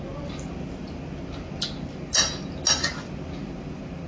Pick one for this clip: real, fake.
real